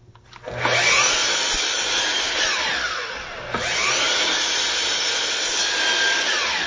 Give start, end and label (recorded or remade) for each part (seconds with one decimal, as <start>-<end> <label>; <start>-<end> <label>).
0.0-6.7 recorded